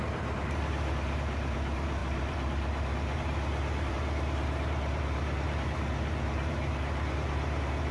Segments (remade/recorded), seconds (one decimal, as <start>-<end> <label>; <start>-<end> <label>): 0.0-7.9 remade